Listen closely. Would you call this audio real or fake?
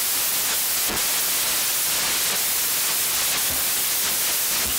real